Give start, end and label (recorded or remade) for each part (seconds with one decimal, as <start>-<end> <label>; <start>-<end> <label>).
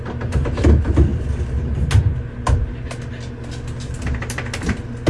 0.0-5.1 recorded